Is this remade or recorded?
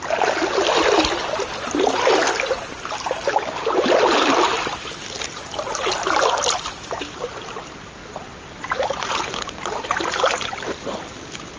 recorded